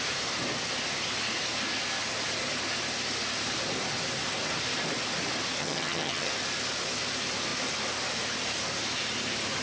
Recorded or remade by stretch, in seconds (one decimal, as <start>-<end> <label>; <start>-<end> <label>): 0.0-5.6 recorded; 5.6-6.3 remade; 6.3-9.6 recorded